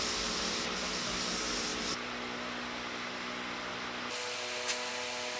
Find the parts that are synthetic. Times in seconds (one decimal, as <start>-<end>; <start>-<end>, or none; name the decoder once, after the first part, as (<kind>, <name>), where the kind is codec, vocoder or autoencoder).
none